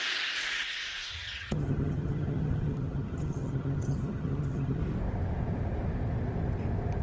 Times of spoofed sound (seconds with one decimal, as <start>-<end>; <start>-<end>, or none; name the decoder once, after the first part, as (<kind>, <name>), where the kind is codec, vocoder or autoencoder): 1.1-4.8 (vocoder, HiFi-GAN)